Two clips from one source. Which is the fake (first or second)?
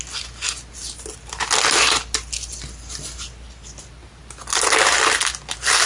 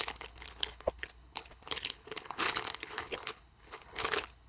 second